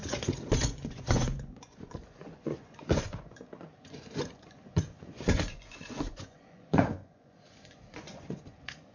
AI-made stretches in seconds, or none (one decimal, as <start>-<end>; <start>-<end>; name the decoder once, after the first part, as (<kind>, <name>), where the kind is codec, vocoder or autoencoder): 0.0-8.9 (vocoder, Vocos)